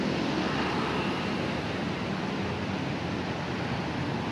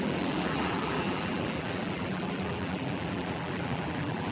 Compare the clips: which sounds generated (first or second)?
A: second